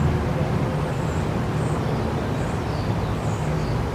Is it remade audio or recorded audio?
recorded